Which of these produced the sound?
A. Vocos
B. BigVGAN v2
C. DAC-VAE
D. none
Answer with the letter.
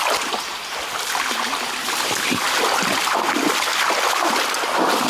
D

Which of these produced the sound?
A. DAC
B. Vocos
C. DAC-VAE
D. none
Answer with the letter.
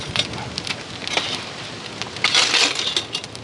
D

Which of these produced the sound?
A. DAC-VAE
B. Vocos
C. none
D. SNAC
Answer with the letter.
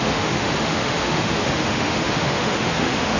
A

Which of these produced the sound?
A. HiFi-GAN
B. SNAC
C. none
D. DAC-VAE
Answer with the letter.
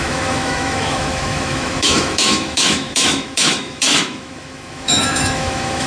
D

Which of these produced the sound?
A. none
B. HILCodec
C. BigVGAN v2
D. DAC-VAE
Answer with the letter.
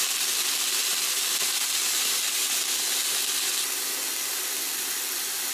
A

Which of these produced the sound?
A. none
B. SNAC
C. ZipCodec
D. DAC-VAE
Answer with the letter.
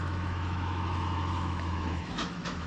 D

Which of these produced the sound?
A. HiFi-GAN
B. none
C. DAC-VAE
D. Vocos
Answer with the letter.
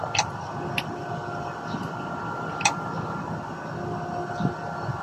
B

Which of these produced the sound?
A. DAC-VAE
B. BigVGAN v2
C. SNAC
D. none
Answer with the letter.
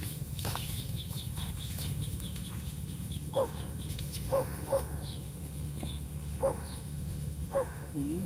A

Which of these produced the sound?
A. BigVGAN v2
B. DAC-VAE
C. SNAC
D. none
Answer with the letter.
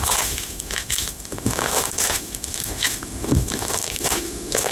B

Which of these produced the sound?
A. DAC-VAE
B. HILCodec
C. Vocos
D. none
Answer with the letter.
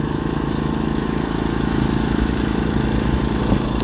A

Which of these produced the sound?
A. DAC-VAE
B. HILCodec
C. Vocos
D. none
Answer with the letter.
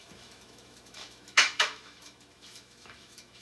A